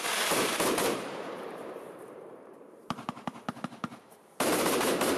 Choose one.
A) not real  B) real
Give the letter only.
A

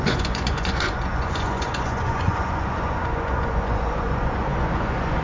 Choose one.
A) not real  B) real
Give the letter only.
A